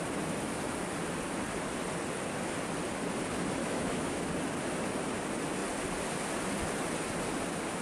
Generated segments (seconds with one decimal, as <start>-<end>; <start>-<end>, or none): 3.6-4.3